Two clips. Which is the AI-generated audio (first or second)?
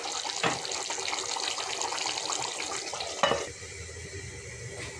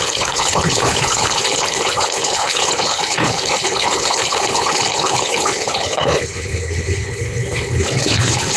second